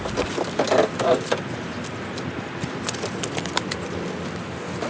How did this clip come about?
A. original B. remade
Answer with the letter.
A